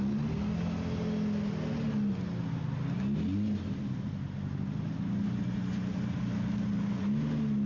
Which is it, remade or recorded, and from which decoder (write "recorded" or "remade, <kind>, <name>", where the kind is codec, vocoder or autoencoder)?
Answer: recorded